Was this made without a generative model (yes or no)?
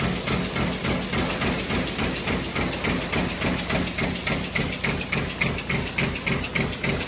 yes